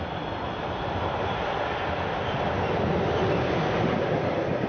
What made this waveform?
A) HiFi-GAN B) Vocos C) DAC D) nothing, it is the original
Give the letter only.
D